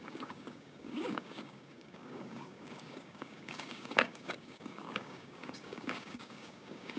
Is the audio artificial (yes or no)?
yes